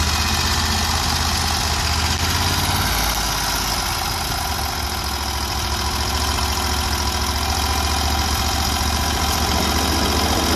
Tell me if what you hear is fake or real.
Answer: real